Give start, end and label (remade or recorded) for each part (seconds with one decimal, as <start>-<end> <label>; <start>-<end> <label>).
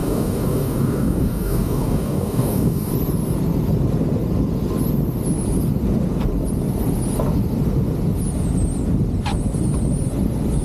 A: 0.0-2.9 remade; 2.9-10.6 recorded